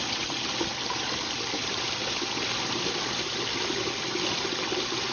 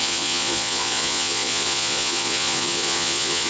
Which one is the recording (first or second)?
first